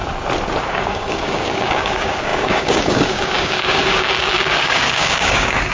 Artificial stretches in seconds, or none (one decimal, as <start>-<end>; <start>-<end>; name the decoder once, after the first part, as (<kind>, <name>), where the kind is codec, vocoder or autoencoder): 0.6-5.7 (codec, DAC)